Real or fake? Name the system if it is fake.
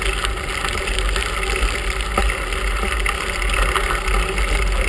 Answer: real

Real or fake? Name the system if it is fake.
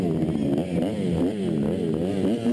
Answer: real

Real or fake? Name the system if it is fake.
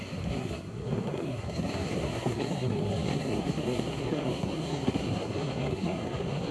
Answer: fake, codec, SNAC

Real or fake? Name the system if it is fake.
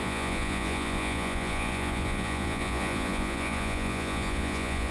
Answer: fake, vocoder, Vocos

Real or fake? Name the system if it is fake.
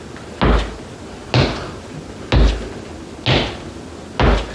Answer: real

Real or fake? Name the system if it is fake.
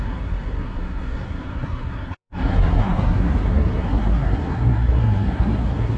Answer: fake, codec, SNAC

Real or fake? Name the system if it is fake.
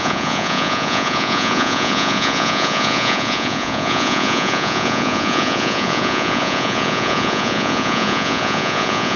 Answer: fake, vocoder, Vocos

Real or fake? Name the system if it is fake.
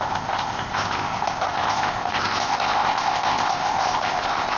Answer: fake, codec, ZipCodec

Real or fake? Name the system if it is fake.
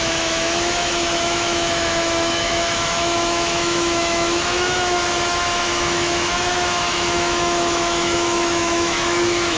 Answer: fake, autoencoder, DAC-VAE